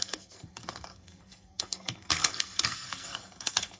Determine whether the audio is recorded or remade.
remade